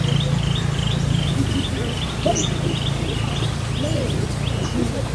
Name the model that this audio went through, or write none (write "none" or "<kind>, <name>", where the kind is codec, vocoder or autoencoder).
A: none